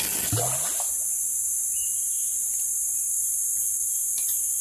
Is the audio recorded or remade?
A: recorded